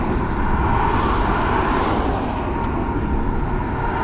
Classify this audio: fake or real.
real